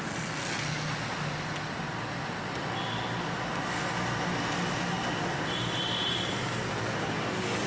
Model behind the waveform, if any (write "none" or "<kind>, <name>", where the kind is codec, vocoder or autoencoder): none